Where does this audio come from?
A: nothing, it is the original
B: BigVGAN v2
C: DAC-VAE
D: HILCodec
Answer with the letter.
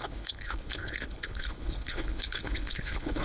D